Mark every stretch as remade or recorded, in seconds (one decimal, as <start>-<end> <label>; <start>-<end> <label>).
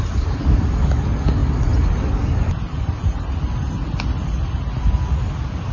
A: 0.0-5.7 recorded